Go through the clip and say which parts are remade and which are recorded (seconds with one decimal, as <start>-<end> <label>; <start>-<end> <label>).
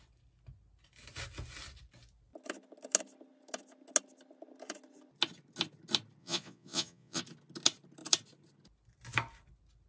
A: 0.0-6.2 recorded; 6.2-7.2 remade; 7.2-9.9 recorded